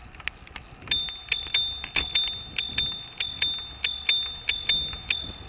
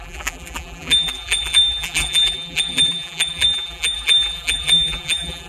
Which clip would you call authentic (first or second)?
first